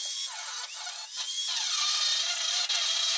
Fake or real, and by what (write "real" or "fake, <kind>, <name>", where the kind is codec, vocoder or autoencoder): real